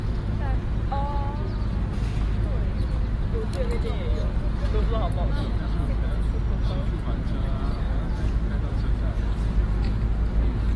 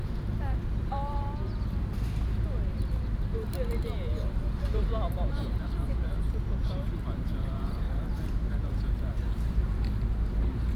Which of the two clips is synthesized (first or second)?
second